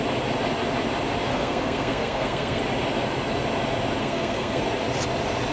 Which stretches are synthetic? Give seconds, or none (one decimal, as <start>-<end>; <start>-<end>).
1.3-2.6; 4.0-4.6